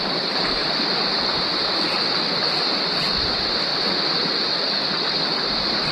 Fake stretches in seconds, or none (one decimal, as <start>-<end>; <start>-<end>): 0.6-1.1; 1.5-2.3